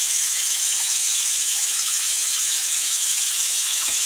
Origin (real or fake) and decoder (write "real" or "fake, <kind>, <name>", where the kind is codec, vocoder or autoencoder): fake, autoencoder, DAC-VAE